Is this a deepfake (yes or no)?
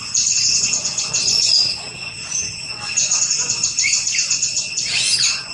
yes